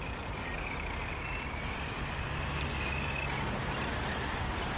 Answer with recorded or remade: recorded